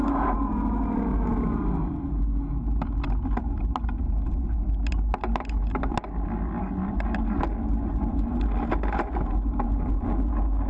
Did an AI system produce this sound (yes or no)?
no